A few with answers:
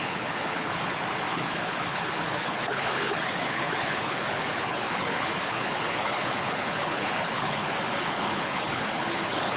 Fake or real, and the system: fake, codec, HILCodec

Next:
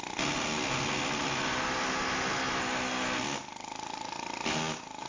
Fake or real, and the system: real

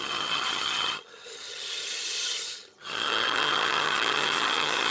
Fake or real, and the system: fake, vocoder, HiFi-GAN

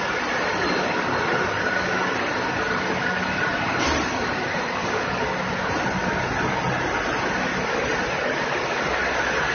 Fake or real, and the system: real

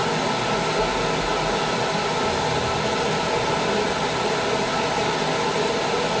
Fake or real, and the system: real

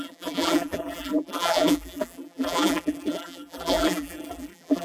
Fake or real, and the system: fake, vocoder, BigVGAN v2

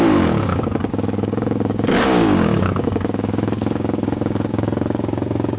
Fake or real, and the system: fake, codec, DAC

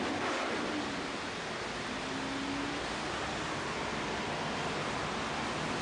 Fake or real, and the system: real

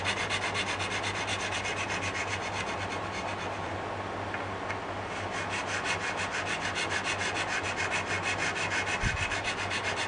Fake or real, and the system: real